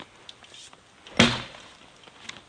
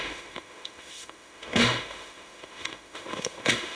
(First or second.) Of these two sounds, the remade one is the second